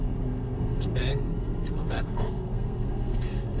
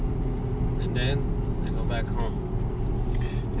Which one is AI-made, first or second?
first